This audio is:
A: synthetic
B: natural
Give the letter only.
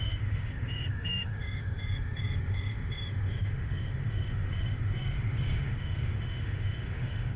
A